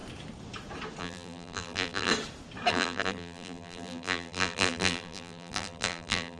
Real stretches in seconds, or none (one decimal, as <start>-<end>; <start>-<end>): 0.0-1.0; 2.1-2.7